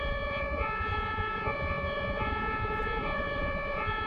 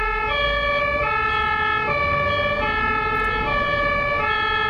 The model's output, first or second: first